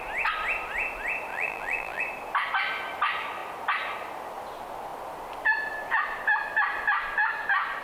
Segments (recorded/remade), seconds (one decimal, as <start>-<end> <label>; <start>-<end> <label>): 0.0-1.3 recorded; 1.3-2.0 remade; 2.0-7.8 recorded